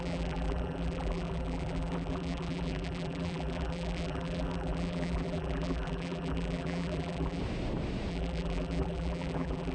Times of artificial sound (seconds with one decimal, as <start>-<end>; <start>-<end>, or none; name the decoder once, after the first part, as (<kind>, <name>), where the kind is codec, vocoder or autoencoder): 0.0-7.4 (vocoder, BigVGAN v2); 8.1-9.7

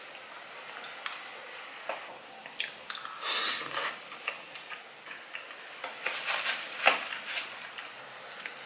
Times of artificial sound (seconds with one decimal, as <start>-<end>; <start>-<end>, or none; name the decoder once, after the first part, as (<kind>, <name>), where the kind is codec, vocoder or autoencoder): none

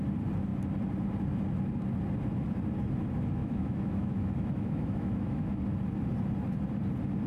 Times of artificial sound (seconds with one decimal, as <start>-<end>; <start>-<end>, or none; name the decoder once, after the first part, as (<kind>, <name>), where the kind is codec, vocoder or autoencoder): 3.4-5.6 (autoencoder, DAC-VAE)